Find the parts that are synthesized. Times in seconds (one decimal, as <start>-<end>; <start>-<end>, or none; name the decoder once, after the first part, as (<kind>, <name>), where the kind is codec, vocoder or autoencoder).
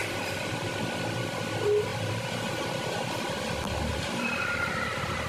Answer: 0.0-0.8 (vocoder, BigVGAN v2); 1.9-3.0; 3.9-5.3